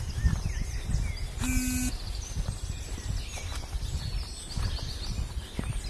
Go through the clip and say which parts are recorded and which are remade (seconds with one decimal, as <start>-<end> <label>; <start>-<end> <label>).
0.0-5.9 recorded

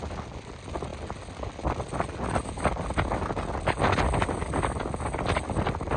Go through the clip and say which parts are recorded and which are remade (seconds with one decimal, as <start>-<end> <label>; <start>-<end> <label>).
0.0-6.0 recorded